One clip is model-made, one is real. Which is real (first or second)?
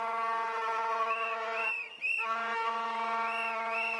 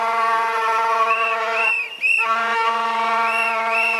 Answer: first